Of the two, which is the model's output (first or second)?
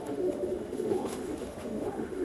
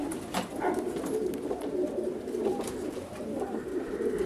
first